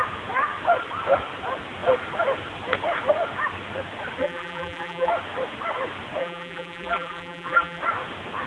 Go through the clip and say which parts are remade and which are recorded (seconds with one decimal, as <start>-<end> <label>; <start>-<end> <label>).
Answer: 0.0-4.2 recorded; 4.2-5.1 remade; 5.1-6.2 recorded; 6.2-7.8 remade; 7.8-8.5 recorded